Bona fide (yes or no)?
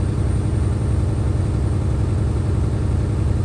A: yes